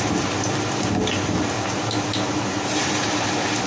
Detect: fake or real real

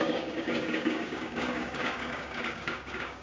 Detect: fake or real fake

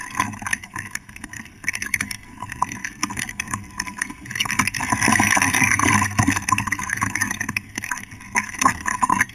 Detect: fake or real fake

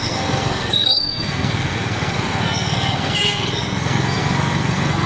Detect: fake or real fake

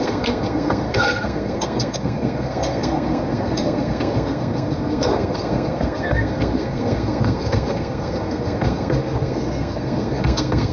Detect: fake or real fake